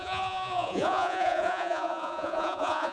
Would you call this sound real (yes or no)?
no